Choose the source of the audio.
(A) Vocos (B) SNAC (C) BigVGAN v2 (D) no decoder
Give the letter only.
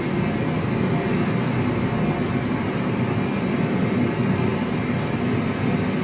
D